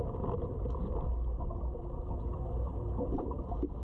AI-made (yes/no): yes